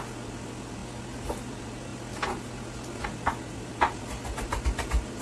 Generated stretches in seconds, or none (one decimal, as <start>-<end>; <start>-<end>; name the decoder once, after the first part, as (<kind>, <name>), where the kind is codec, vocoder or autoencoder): none